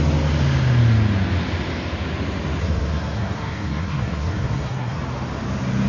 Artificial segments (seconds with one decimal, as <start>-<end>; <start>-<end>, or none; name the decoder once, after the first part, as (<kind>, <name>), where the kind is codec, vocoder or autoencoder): 2.6-5.0 (codec, SNAC)